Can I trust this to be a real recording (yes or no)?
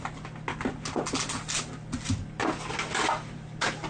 yes